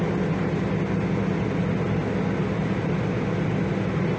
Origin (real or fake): real